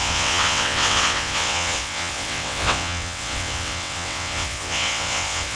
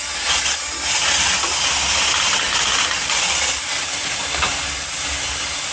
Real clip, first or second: second